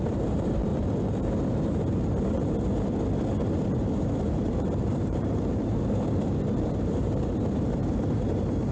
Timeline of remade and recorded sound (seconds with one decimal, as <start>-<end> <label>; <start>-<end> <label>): 0.0-0.7 remade; 0.7-4.3 recorded; 4.3-8.7 remade